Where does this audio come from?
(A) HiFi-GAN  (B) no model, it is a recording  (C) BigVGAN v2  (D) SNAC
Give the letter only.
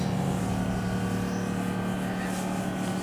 B